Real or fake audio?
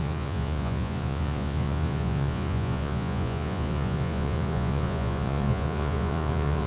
fake